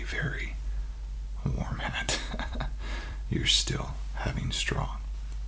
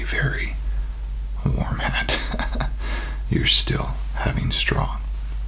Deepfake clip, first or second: first